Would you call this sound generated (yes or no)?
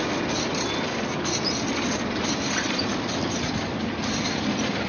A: no